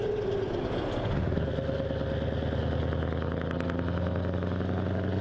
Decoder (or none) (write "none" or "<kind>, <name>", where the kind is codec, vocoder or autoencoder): none